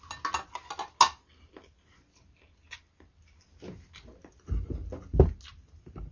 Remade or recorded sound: recorded